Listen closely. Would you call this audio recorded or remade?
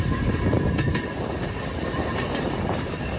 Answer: remade